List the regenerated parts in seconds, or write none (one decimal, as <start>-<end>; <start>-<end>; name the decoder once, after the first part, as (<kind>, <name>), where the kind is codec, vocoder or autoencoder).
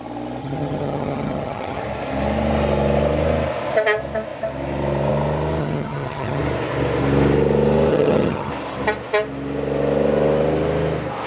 0.4-1.8 (vocoder, HiFi-GAN); 5.6-6.4; 7.9-8.5